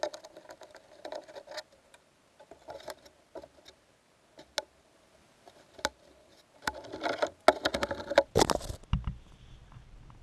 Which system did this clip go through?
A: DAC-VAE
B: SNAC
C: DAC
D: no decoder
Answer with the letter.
D